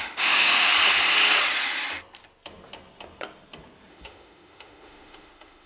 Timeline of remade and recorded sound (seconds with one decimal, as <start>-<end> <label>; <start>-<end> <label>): 0.0-0.7 remade; 0.7-3.9 recorded; 3.9-5.7 remade